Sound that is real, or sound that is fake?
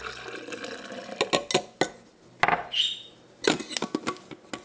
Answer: real